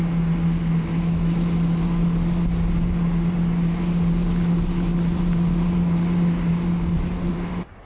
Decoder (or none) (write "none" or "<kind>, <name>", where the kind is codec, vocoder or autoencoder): none